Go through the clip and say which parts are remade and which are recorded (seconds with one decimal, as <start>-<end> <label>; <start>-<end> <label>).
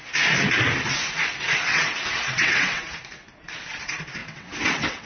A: 0.0-1.7 recorded; 1.7-2.8 remade; 2.8-4.2 recorded; 4.2-5.1 remade